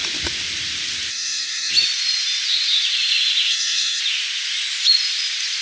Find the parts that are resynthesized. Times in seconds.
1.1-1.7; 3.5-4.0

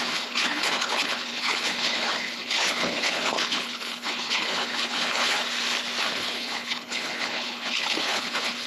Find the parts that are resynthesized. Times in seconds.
0.0-5.4; 6.0-8.7

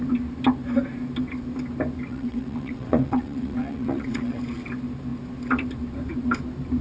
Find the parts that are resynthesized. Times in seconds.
2.1-4.4

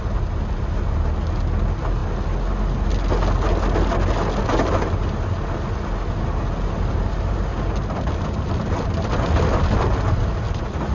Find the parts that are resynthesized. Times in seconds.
none

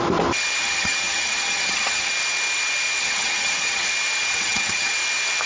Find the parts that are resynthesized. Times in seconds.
0.6-2.1; 3.0-3.9; 4.3-4.9

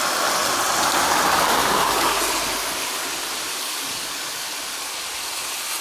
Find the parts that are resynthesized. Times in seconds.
1.6-2.2; 3.5-4.4